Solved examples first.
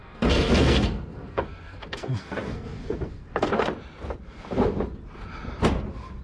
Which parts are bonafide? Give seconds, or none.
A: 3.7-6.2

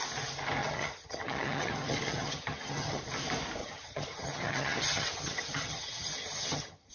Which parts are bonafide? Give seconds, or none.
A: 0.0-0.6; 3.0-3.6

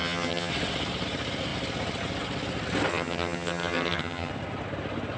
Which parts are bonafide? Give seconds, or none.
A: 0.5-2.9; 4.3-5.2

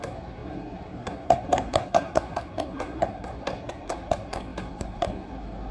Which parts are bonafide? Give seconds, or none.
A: none

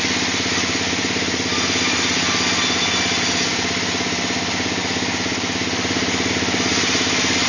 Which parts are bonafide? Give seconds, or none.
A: 0.0-7.5

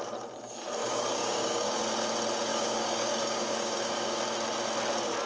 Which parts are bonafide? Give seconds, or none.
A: 0.0-0.8; 1.8-2.5; 4.2-5.3

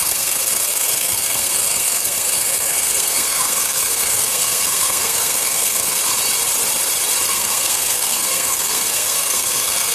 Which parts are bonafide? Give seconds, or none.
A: 6.0-7.3